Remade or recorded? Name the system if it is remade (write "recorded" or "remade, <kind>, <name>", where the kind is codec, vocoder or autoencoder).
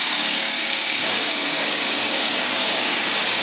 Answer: remade, codec, DAC